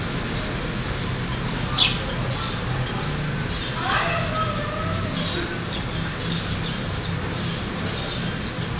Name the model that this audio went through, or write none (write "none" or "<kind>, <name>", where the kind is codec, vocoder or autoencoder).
none